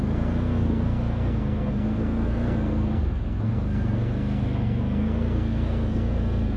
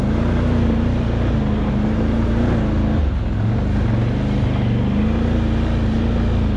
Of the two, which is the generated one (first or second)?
first